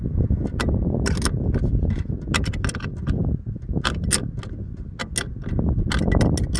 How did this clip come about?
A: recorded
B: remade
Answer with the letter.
A